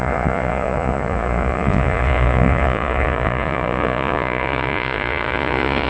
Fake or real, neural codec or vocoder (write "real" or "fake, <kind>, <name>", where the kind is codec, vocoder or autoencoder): fake, vocoder, Vocos